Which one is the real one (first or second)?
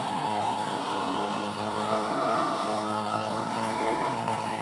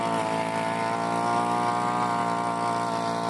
second